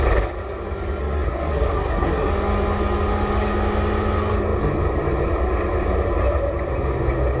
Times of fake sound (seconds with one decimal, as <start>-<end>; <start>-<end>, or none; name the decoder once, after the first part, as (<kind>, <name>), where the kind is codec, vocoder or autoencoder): 1.0-2.3 (codec, SNAC)